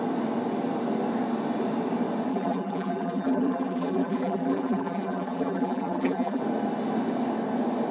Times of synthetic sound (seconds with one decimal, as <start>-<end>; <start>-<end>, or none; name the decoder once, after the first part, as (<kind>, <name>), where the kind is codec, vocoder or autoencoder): 2.3-6.4 (vocoder, BigVGAN v2)